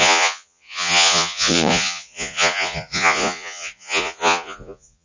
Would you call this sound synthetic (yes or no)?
yes